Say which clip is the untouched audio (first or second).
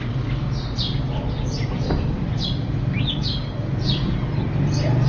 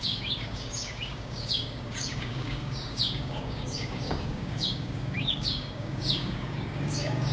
first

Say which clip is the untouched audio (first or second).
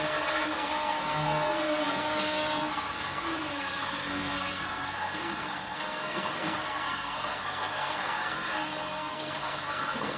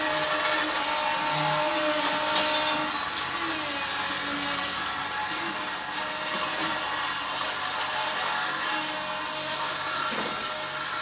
second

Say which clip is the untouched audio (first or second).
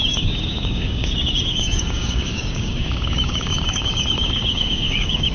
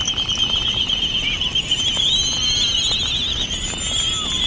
second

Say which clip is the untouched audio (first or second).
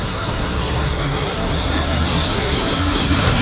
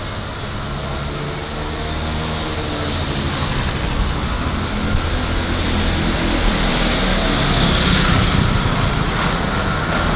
second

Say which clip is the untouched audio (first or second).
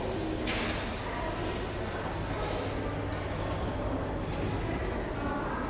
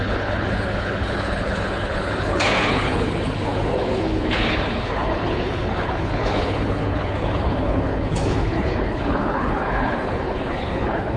first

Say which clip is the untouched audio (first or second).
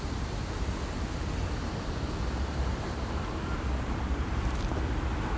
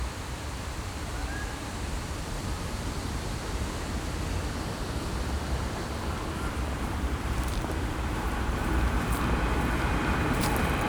first